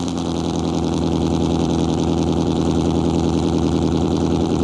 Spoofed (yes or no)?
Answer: yes